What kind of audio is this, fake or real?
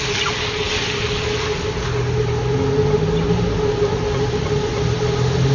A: real